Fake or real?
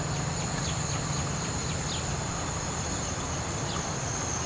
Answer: real